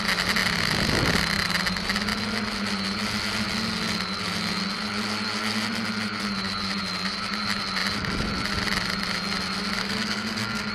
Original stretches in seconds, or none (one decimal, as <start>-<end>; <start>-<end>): 0.0-9.8